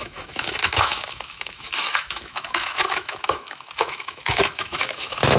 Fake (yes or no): yes